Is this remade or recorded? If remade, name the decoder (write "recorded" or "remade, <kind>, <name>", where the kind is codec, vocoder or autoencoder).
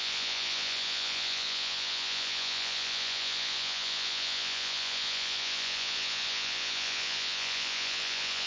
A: remade, vocoder, Vocos